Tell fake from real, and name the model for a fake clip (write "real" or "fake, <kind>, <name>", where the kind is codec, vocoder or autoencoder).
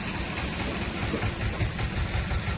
real